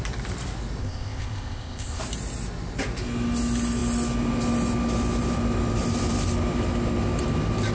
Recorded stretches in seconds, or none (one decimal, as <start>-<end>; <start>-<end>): 0.0-0.8; 2.0-7.7